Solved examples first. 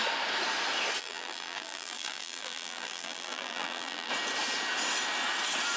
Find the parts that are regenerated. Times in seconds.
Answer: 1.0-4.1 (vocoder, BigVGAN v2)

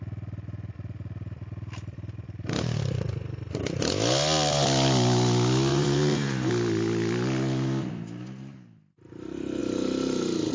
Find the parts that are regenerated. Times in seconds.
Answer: 5.7-6.5 (vocoder, BigVGAN v2)

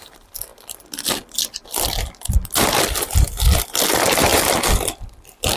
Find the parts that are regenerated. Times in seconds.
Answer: 0.5-3.9 (vocoder, BigVGAN v2); 4.3-5.6

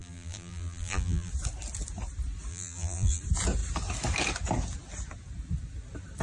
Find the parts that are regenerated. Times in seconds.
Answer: 0.0-1.3 (vocoder, BigVGAN v2); 2.5-3.2